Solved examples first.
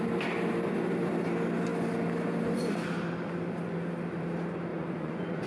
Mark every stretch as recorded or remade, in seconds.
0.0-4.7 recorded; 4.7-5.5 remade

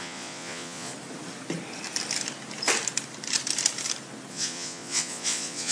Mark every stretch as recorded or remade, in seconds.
0.0-0.9 remade; 0.9-4.3 recorded; 4.3-5.7 remade